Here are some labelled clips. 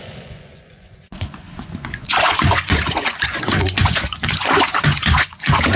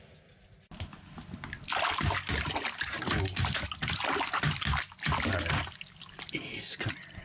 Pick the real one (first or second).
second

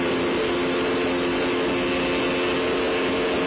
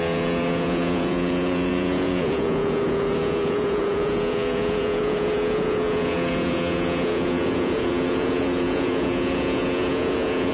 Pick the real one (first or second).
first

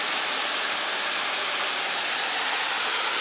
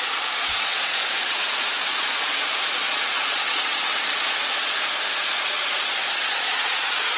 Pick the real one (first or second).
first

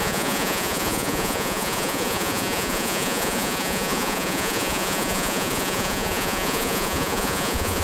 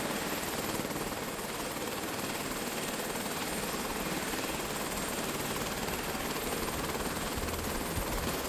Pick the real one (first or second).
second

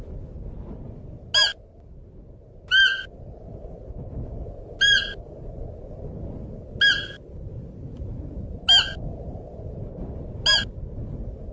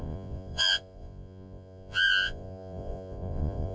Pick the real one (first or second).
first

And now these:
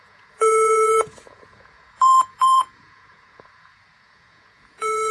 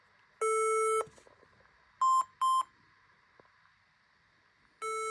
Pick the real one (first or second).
second